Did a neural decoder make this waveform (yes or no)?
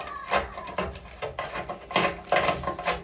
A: no